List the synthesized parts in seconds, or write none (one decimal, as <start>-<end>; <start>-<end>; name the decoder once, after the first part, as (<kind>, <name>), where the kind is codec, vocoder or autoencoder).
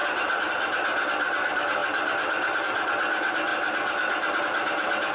none